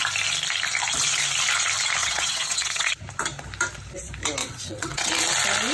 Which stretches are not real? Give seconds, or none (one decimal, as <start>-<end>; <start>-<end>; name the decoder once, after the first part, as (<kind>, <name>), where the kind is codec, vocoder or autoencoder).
2.0-2.9 (vocoder, WaveNeXt); 4.4-5.1